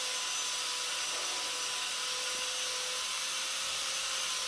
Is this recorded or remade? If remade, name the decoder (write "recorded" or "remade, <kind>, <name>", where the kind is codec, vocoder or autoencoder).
recorded